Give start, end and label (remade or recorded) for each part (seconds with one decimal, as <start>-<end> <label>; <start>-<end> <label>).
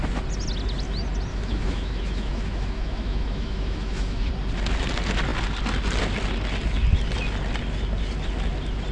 0.0-1.3 recorded; 1.3-4.3 remade; 4.3-8.9 recorded